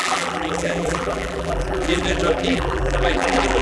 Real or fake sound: fake